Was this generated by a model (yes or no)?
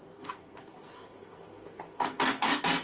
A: yes